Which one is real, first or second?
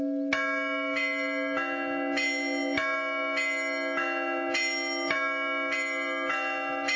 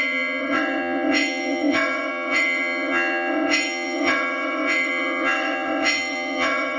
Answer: first